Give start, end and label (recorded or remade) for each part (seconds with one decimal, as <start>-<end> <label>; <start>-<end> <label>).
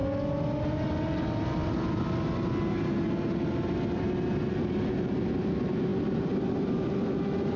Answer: 0.0-7.6 recorded